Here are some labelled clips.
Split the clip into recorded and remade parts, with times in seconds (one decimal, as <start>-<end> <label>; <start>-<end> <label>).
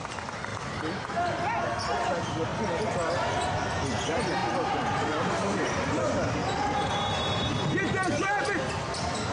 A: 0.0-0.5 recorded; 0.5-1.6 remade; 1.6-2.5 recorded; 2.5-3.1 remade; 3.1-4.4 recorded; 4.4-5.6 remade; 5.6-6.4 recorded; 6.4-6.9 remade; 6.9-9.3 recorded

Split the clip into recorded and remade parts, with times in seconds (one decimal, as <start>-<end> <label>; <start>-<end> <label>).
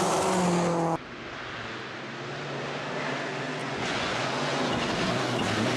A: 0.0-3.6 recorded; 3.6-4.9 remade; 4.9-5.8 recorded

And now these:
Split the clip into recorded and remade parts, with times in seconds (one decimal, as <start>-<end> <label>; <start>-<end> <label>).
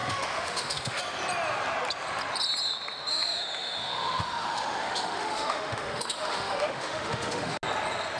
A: 0.0-1.0 remade; 1.0-3.1 recorded; 3.1-7.6 remade; 7.6-8.2 recorded